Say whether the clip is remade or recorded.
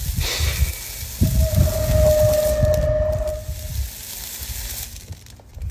recorded